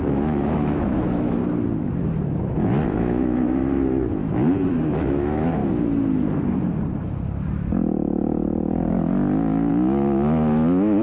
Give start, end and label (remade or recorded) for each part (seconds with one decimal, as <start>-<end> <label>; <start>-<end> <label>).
0.0-1.4 remade; 1.4-2.5 recorded; 2.5-3.6 remade; 3.6-4.7 recorded; 4.7-5.6 remade; 5.6-9.7 recorded; 9.7-11.0 remade

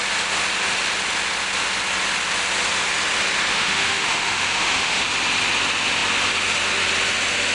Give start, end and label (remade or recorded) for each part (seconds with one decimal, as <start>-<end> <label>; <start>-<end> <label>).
0.0-3.5 recorded; 3.5-5.0 remade; 5.0-7.5 recorded

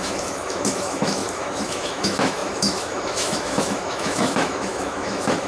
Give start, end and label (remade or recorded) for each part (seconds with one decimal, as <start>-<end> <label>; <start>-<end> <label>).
0.0-5.5 remade